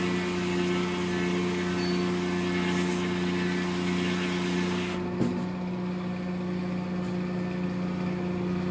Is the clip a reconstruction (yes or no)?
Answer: no